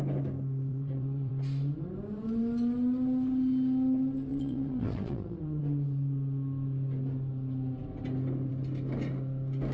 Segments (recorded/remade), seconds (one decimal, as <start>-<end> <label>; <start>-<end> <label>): 0.0-0.7 recorded; 0.7-1.3 remade; 1.3-4.3 recorded; 4.3-5.6 remade; 5.6-9.7 recorded